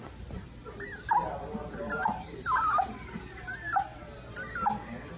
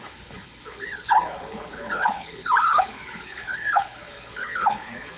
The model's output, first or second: second